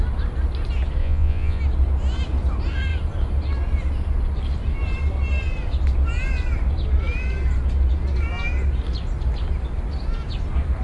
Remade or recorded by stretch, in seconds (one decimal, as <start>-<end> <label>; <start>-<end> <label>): 0.0-1.0 recorded; 1.0-1.6 remade; 1.6-10.8 recorded